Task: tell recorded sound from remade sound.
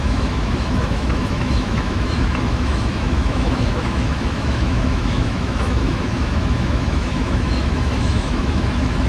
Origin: remade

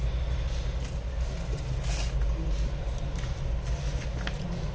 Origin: recorded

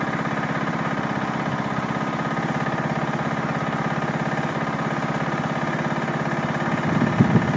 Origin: recorded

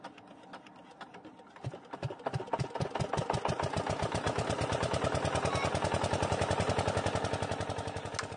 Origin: recorded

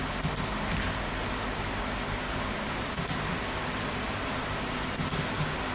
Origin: recorded